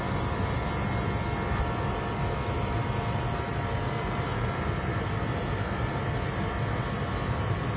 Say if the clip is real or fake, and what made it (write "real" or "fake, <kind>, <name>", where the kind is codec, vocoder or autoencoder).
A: real